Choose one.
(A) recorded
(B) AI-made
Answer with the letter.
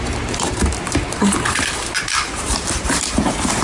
B